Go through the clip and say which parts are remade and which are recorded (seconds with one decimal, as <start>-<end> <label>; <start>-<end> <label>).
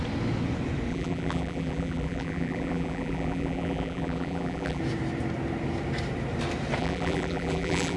0.0-0.9 recorded; 0.9-4.8 remade; 4.8-6.8 recorded; 6.8-8.0 remade